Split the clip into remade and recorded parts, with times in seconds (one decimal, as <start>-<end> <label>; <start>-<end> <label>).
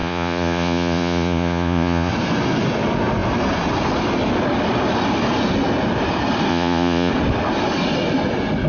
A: 0.0-2.1 remade; 2.1-6.5 recorded; 6.5-7.1 remade; 7.1-8.7 recorded